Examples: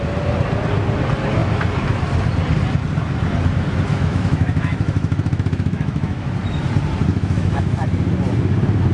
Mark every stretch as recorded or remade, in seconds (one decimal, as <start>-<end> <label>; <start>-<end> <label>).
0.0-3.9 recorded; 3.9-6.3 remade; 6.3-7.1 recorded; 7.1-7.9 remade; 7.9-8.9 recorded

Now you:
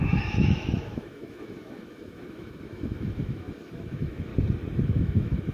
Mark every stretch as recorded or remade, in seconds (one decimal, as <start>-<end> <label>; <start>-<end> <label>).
0.0-4.3 remade; 4.3-4.8 recorded; 4.8-5.5 remade

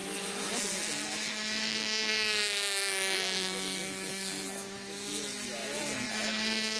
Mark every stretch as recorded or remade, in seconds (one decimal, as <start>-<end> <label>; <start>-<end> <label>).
0.0-6.8 remade

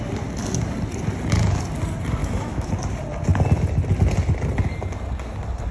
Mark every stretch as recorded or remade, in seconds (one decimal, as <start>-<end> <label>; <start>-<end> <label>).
0.0-2.2 recorded; 2.2-2.7 remade; 2.7-5.7 recorded